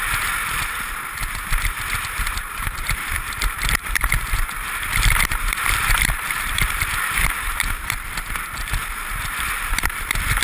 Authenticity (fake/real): fake